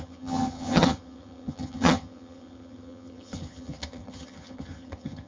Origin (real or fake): fake